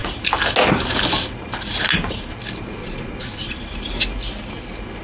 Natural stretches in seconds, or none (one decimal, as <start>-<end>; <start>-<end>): 0.0-2.8; 3.6-5.0